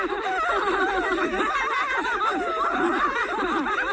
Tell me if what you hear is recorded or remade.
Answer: recorded